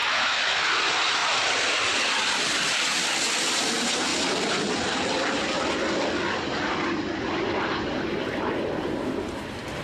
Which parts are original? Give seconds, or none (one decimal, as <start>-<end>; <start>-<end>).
0.7-9.8